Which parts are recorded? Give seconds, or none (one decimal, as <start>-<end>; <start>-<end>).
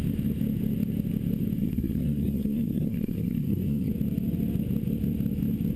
0.0-1.6; 3.9-5.8